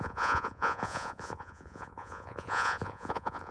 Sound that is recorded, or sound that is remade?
remade